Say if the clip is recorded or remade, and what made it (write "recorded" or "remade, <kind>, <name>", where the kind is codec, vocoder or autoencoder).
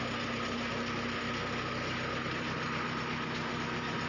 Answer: recorded